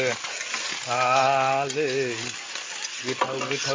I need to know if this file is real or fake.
real